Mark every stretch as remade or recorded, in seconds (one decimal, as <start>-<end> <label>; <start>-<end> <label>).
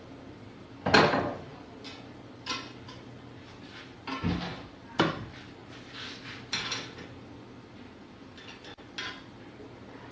0.0-10.1 recorded